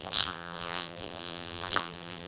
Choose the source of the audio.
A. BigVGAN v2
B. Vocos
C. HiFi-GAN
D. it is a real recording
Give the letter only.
A